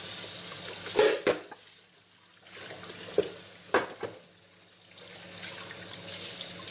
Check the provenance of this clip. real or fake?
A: real